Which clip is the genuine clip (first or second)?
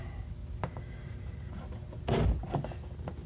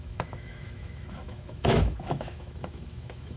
first